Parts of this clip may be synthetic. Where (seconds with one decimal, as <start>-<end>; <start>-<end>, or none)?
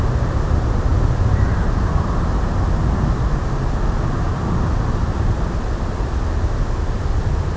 none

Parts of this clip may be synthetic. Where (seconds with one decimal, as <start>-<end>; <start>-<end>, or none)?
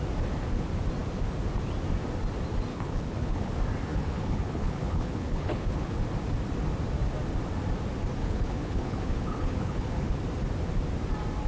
2.7-3.5; 3.9-6.0; 8.2-10.1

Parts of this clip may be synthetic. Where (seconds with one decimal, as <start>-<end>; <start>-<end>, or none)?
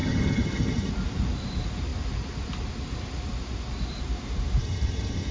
0.0-0.9; 4.6-5.3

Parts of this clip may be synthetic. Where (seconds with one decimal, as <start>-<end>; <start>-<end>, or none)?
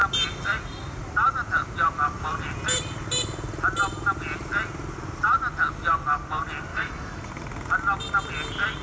6.7-7.3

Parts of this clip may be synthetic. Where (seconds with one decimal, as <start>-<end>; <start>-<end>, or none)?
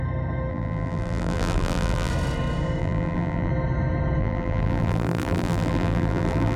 0.5-2.1; 2.8-3.5; 4.2-6.6